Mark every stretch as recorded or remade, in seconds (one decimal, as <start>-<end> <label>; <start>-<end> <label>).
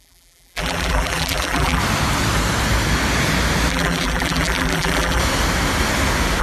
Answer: 0.0-1.8 remade; 1.8-3.7 recorded; 3.7-5.2 remade; 5.2-6.4 recorded